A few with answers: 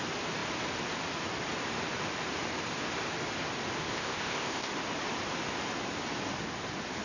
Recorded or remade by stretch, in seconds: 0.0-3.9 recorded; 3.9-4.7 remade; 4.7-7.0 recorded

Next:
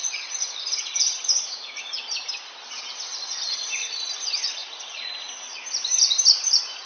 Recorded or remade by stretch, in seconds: 0.0-1.8 remade; 1.8-3.1 recorded; 3.1-4.0 remade; 4.0-4.6 recorded; 4.6-5.1 remade; 5.1-6.9 recorded

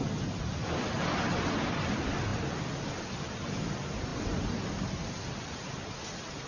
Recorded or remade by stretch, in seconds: 0.0-6.5 recorded

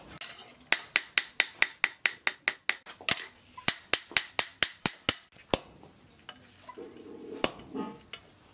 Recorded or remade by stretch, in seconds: 0.0-8.5 recorded

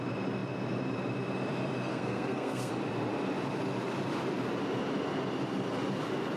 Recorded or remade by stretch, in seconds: 0.0-1.9 recorded; 1.9-2.7 remade; 2.7-6.4 recorded